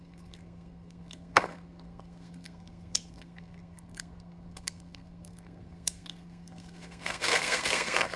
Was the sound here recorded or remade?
remade